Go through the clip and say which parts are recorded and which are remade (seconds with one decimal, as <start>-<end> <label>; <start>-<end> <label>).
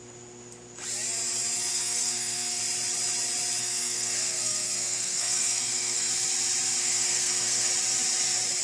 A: 0.0-1.7 recorded; 1.7-2.6 remade; 2.6-3.6 recorded; 3.6-6.1 remade; 6.1-6.8 recorded; 6.8-7.7 remade; 7.7-8.6 recorded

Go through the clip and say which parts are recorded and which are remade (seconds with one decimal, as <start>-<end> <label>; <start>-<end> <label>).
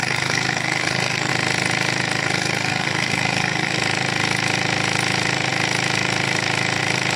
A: 0.0-1.3 remade; 1.3-2.2 recorded; 2.2-3.8 remade; 3.8-7.2 recorded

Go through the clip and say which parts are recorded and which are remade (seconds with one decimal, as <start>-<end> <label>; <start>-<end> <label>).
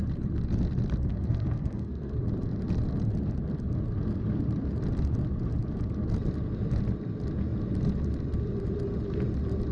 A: 0.0-1.1 recorded; 1.1-2.2 remade; 2.2-9.7 recorded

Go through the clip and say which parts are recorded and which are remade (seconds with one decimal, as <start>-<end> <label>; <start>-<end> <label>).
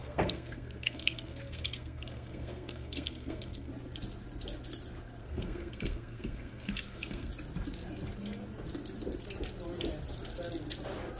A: 0.0-3.7 remade; 3.7-5.2 recorded; 5.2-7.3 remade; 7.3-11.2 recorded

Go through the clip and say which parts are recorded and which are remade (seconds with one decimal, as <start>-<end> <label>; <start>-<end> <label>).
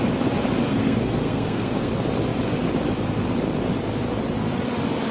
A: 0.0-0.7 recorded; 0.7-1.9 remade; 1.9-5.1 recorded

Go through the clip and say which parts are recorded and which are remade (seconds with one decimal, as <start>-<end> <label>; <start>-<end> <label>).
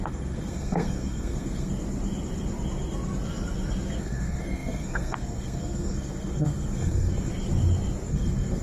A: 0.0-1.7 remade; 1.7-4.0 recorded; 4.0-7.3 remade; 7.3-8.1 recorded; 8.1-8.6 remade